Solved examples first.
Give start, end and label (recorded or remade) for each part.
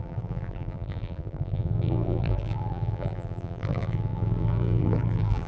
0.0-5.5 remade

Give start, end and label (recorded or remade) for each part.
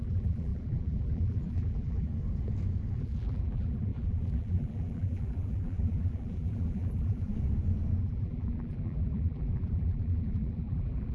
0.0-2.1 remade; 2.1-2.9 recorded; 2.9-7.3 remade; 7.3-8.0 recorded; 8.0-11.1 remade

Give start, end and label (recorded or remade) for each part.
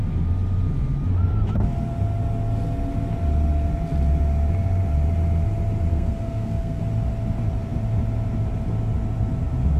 0.0-5.9 recorded; 5.9-6.8 remade; 6.8-9.8 recorded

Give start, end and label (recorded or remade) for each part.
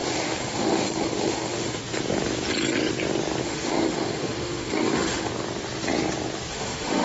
0.0-1.8 remade; 1.8-3.4 recorded; 3.4-5.3 remade; 5.3-6.5 recorded; 6.5-7.0 remade